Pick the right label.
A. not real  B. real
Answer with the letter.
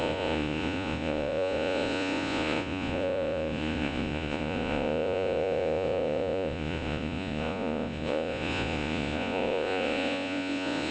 A